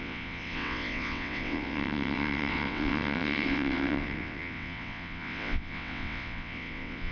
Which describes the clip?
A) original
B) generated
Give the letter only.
B